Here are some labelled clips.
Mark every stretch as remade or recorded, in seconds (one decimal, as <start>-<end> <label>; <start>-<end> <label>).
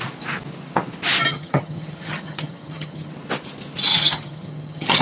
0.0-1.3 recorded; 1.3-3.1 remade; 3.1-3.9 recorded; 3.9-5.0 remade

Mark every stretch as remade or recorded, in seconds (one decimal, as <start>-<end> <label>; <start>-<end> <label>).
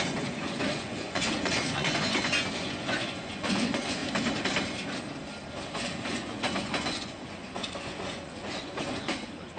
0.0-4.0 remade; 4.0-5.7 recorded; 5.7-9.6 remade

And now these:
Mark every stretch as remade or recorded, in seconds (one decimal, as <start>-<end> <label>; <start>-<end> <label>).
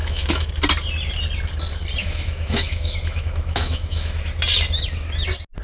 0.0-0.5 remade; 0.5-2.0 recorded; 2.0-4.3 remade; 4.3-5.6 recorded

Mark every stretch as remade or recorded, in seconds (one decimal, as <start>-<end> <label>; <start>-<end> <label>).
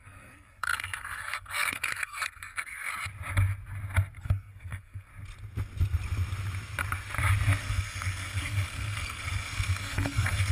0.0-2.9 remade; 2.9-4.2 recorded; 4.2-5.1 remade; 5.1-7.6 recorded; 7.6-10.5 remade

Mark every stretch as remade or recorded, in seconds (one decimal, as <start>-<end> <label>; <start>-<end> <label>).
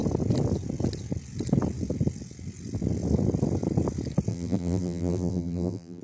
0.0-4.3 recorded; 4.3-6.0 remade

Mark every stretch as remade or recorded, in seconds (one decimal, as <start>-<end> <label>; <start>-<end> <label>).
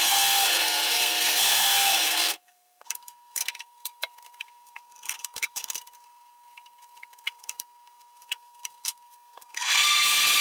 0.0-10.4 remade